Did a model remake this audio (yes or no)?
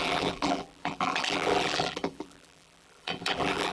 yes